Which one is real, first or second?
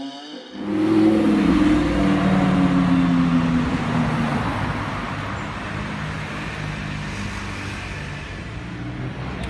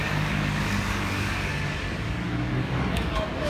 first